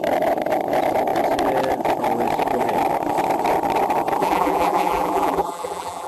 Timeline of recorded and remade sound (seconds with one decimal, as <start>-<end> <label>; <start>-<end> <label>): 0.0-4.2 recorded; 4.2-6.1 remade